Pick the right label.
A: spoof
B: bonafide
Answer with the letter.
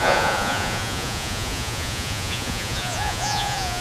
A